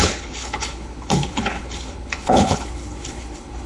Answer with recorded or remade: remade